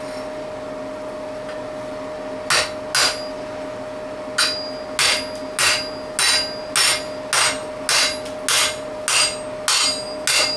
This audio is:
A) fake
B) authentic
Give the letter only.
B